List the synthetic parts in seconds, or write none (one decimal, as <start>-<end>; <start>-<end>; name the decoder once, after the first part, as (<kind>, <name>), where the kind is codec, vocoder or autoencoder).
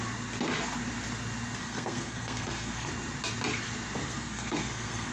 1.6-2.9 (codec, SNAC); 4.0-5.1